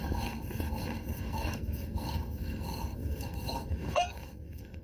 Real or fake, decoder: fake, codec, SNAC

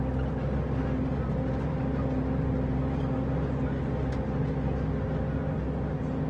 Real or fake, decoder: real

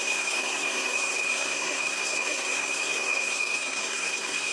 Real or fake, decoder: fake, codec, SNAC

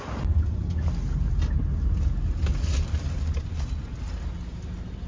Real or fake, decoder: real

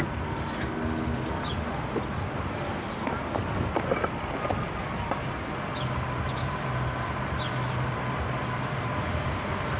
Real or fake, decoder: real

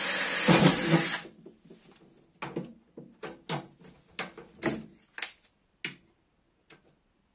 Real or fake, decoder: real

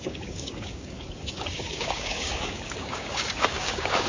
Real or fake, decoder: fake, codec, DAC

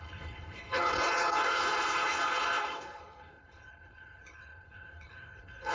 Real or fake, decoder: fake, codec, HILCodec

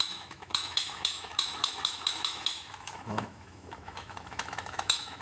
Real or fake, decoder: fake, autoencoder, DAC-VAE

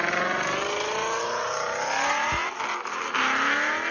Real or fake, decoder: real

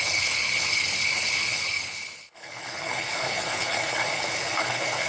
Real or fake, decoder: fake, codec, HILCodec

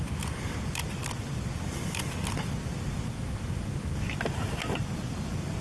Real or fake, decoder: real